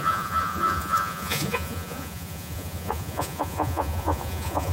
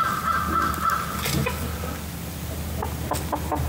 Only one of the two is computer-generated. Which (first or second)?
first